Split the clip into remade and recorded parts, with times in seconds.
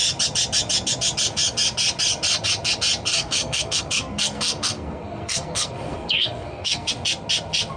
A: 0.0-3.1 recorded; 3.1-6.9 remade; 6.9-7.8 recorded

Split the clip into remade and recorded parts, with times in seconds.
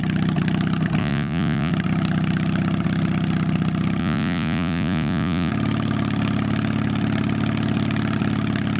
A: 0.0-1.0 recorded; 1.0-1.7 remade; 1.7-4.0 recorded; 4.0-5.5 remade; 5.5-8.8 recorded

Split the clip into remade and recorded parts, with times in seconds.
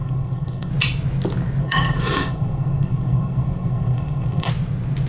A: 0.0-0.7 remade; 0.7-1.6 recorded; 1.6-4.5 remade; 4.5-5.1 recorded